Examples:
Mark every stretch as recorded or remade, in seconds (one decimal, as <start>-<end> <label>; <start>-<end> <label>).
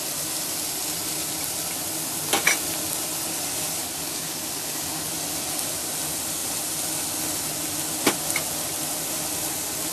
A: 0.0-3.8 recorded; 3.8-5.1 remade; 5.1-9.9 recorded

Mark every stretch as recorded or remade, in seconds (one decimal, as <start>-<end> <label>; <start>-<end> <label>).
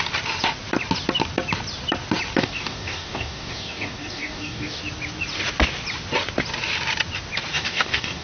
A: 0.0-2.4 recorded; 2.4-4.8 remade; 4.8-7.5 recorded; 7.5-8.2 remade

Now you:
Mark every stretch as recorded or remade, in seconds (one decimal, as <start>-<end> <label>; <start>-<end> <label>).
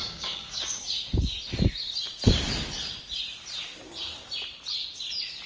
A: 0.0-1.4 remade; 1.4-5.5 recorded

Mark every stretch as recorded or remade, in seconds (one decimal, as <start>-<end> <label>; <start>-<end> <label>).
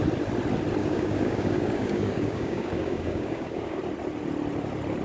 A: 0.0-0.8 recorded; 0.8-3.8 remade; 3.8-5.0 recorded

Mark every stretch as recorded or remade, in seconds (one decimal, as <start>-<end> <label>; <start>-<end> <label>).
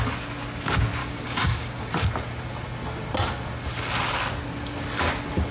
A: 0.0-1.0 recorded; 1.0-1.9 remade; 1.9-5.5 recorded